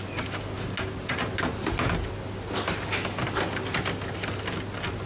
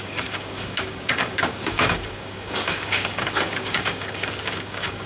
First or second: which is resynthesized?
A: second